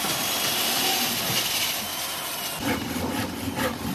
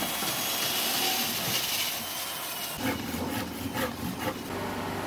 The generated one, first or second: first